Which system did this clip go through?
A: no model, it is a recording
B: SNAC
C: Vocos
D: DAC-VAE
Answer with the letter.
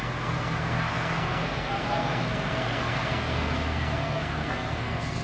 B